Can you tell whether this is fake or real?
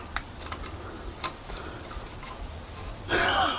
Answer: real